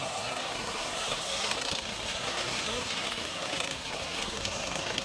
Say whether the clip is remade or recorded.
remade